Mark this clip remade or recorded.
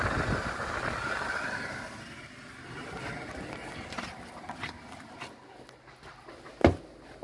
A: recorded